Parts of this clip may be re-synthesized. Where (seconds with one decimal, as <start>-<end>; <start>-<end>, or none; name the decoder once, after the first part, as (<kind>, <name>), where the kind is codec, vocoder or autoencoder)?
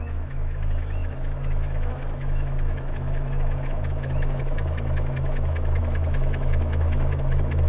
0.0-7.7 (autoencoder, DAC-VAE)